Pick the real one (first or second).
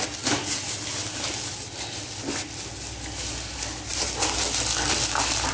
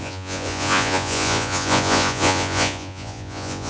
first